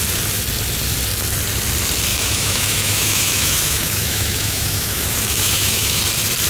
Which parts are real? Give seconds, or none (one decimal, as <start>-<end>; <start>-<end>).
0.0-2.1; 6.0-6.5